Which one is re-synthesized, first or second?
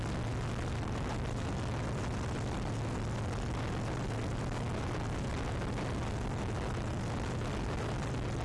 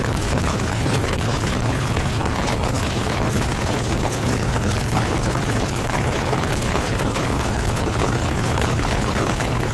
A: second